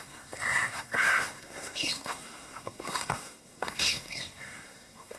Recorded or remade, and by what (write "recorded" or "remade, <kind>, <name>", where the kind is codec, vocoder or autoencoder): remade, codec, SNAC